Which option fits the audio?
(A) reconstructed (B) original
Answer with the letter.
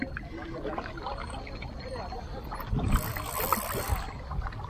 B